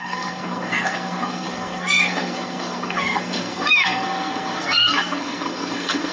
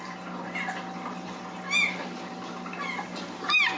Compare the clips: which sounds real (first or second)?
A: second